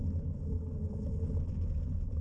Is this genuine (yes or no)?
yes